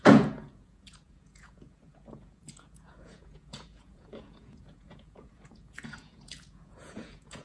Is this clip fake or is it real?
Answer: fake